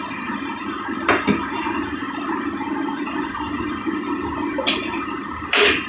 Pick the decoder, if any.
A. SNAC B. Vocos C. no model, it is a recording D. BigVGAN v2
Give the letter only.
C